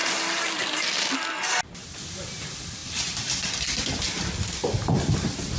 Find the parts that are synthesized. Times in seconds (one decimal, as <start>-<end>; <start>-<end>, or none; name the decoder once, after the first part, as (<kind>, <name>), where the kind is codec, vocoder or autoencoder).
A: 2.8-3.6 (vocoder, BigVGAN v2)